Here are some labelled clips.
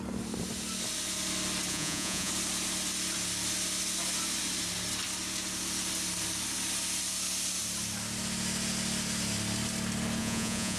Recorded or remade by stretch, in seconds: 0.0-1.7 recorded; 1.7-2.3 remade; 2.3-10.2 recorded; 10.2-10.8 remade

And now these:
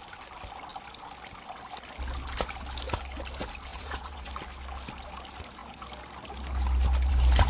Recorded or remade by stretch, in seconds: 0.0-3.7 recorded; 3.7-4.3 remade; 4.3-7.5 recorded

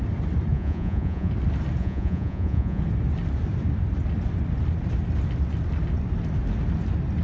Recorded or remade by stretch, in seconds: 0.0-0.5 recorded; 0.5-1.3 remade; 1.3-1.8 recorded; 1.8-2.8 remade; 2.8-7.2 recorded

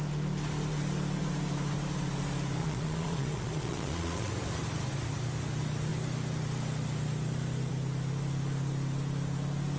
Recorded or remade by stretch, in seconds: 0.0-2.6 recorded; 2.6-4.3 remade; 4.3-9.8 recorded